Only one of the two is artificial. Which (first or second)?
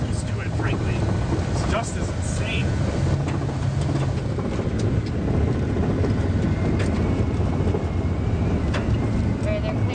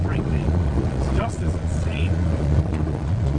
second